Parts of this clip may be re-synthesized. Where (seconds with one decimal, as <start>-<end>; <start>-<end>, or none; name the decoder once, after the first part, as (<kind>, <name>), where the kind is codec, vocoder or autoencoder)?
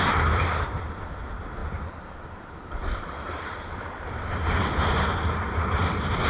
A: 0.0-6.3 (vocoder, BigVGAN v2)